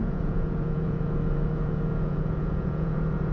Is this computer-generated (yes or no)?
yes